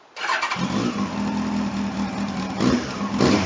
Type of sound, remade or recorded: recorded